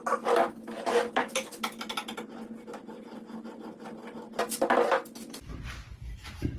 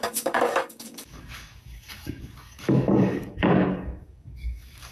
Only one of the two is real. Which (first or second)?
first